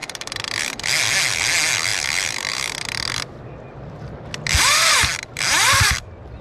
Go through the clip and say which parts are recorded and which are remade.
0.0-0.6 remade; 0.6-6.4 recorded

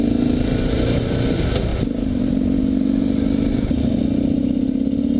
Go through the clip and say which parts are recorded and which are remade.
0.0-1.7 recorded; 1.7-2.6 remade; 2.6-5.2 recorded